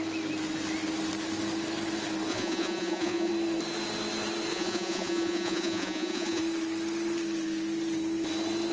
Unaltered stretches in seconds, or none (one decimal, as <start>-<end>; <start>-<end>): 0.0-2.3; 3.3-4.5; 6.4-8.7